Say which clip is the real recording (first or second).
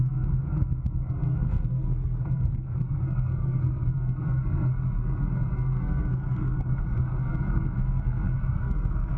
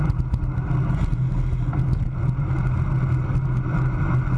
second